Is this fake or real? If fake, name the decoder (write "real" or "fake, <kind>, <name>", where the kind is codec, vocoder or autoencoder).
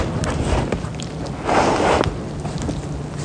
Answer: real